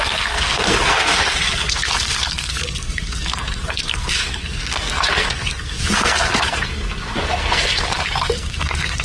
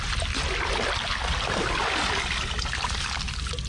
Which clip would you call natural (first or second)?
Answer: second